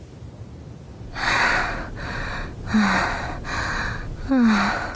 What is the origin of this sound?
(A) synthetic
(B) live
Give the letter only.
B